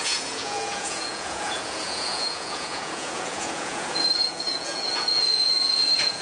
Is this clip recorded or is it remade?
remade